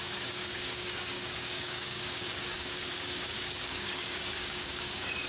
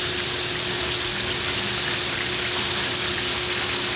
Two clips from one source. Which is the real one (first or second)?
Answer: second